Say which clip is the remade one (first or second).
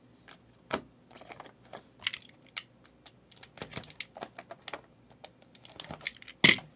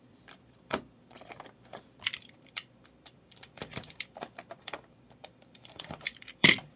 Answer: second